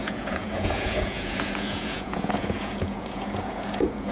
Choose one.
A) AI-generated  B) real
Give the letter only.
A